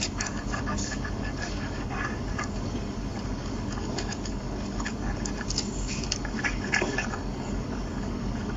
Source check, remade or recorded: remade